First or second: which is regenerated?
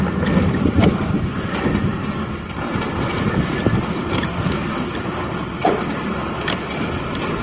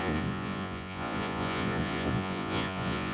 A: second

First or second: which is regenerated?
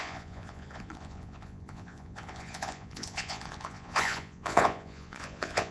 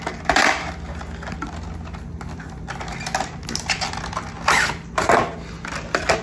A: first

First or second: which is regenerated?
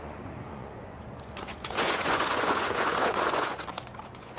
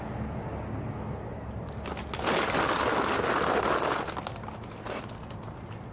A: first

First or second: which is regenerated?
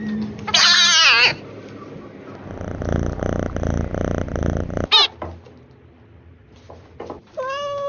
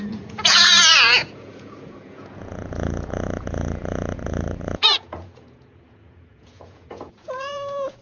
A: second